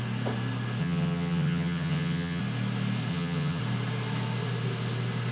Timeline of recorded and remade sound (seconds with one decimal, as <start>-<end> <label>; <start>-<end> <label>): 0.0-0.8 recorded; 0.8-2.4 remade; 2.4-3.1 recorded; 3.1-3.6 remade; 3.6-5.3 recorded